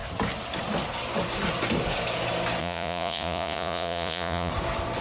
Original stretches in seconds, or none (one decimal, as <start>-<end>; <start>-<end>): 0.0-2.6; 4.5-5.0